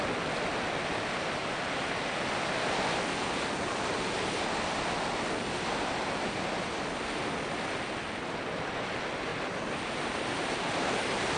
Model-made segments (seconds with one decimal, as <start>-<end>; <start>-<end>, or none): none